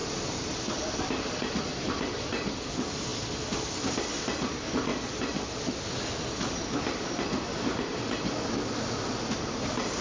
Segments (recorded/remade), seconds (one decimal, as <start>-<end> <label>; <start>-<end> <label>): 0.0-10.0 recorded